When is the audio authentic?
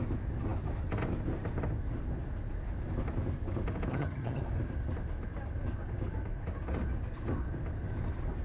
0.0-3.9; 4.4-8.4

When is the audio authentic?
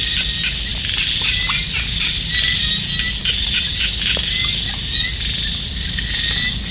0.0-6.7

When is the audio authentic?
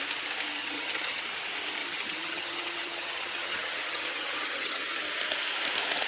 0.0-0.6; 1.2-1.8; 5.0-6.1